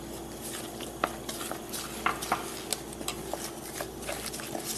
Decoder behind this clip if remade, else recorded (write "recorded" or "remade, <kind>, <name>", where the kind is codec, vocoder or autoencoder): recorded